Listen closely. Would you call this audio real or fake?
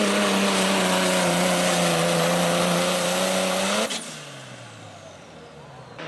real